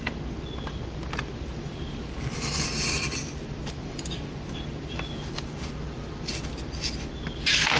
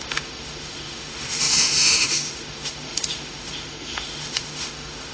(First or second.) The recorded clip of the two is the first